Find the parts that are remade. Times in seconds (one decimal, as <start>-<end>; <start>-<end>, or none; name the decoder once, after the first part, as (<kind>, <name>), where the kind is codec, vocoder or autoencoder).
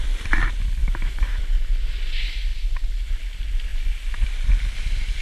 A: 0.8-1.4 (autoencoder, DAC-VAE)